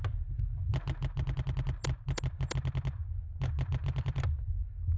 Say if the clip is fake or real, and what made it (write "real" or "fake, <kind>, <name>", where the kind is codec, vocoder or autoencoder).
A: real